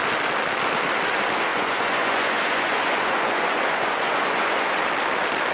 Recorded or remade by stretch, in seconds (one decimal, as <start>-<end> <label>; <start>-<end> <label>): 0.0-1.5 recorded; 1.5-4.8 remade; 4.8-5.5 recorded